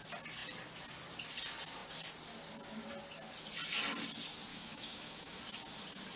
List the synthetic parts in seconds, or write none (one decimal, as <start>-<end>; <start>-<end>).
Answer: 4.5-5.4